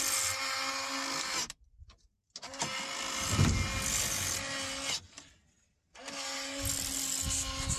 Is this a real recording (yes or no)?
yes